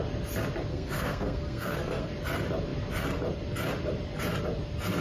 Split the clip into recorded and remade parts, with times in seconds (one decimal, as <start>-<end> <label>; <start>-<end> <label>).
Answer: 0.0-0.7 recorded; 0.7-2.1 remade; 2.1-5.0 recorded